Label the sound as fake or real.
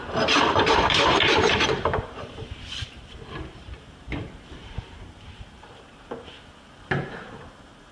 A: fake